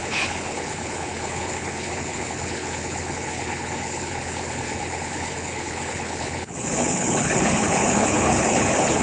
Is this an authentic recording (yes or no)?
no